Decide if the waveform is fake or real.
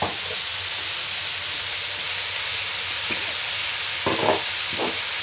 real